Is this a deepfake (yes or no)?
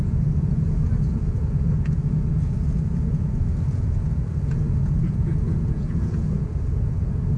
yes